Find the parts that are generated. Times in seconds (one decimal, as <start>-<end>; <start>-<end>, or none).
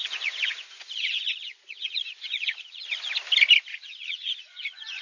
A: 0.0-3.0; 3.7-5.0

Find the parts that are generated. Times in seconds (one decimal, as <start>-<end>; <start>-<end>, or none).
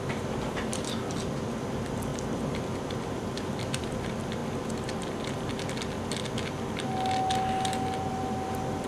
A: 0.0-2.1; 3.1-4.4; 8.1-8.9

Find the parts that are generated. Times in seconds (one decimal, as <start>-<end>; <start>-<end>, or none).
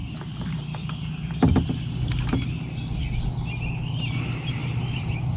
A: 0.0-0.7; 4.6-5.4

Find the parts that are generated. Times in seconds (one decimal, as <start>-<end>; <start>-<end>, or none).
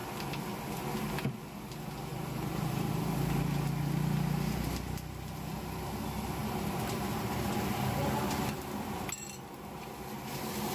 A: 2.1-2.9; 6.4-8.4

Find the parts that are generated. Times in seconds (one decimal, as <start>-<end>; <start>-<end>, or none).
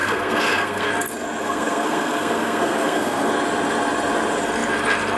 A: 0.0-0.9; 1.4-3.3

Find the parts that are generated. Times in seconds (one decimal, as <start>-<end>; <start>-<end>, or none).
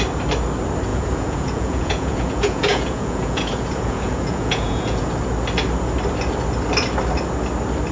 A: 0.9-5.1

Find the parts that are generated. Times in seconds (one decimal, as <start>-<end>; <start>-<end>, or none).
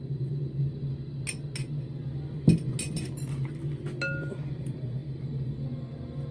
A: 0.0-0.8; 4.6-5.0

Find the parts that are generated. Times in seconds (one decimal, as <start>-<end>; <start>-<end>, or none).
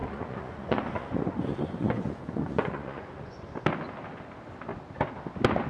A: 0.0-3.4